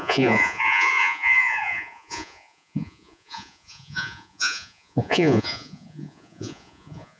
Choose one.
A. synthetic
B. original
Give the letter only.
A